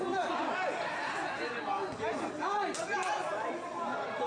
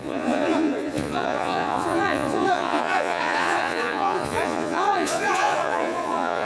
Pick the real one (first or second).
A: first